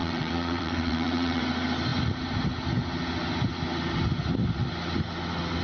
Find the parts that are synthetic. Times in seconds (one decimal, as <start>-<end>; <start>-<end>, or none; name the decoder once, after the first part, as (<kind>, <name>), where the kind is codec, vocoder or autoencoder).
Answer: 0.0-1.4 (vocoder, WaveNeXt)